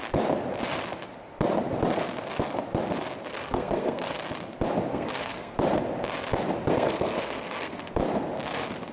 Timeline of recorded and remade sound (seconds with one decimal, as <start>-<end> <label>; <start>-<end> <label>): 0.0-3.3 recorded; 3.3-4.2 remade; 4.2-4.9 recorded; 4.9-5.5 remade; 5.5-6.7 recorded; 6.7-7.9 remade; 7.9-8.9 recorded